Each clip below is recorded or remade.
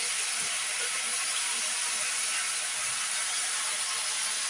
recorded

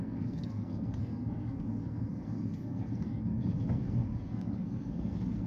remade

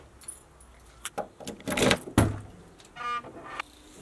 recorded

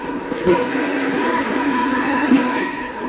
remade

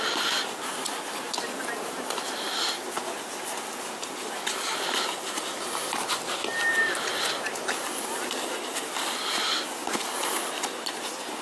recorded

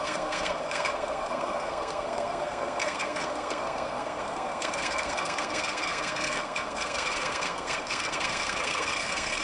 remade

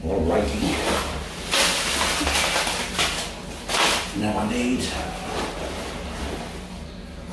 recorded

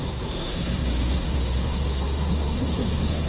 remade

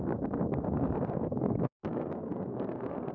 remade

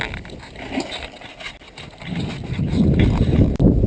recorded